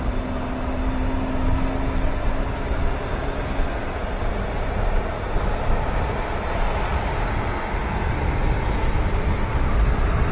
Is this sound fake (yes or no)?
no